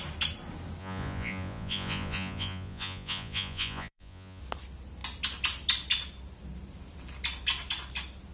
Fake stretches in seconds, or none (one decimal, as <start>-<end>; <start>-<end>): 0.8-4.4